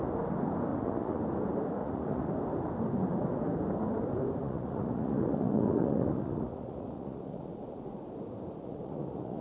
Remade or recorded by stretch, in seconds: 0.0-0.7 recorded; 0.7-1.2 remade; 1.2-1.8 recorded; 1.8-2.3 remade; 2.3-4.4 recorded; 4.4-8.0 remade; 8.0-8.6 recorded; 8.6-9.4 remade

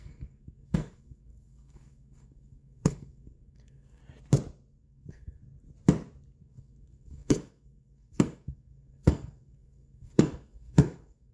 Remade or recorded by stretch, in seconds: 0.0-4.0 remade; 4.0-4.8 recorded; 4.8-5.4 remade; 5.4-6.4 recorded; 6.4-11.3 remade

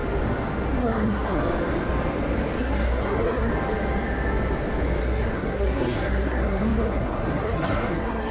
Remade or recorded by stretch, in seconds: 0.0-0.8 recorded; 0.8-1.4 remade; 1.4-2.6 recorded; 2.6-3.5 remade; 3.5-5.0 recorded; 5.0-8.3 remade

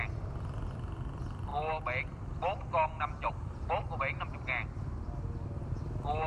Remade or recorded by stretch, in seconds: 0.0-6.3 recorded

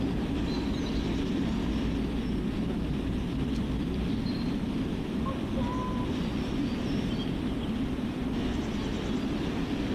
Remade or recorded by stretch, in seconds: 0.0-8.2 recorded; 8.2-9.1 remade; 9.1-9.9 recorded

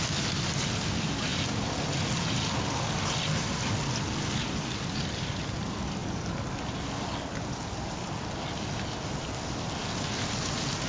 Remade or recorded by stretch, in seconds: 0.0-10.9 recorded